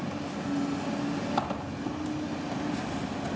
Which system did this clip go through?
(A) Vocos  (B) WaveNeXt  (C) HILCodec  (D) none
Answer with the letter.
D